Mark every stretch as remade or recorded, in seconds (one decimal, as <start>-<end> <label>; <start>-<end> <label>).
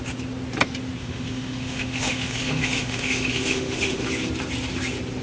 0.0-1.0 recorded; 1.0-4.1 remade; 4.1-5.2 recorded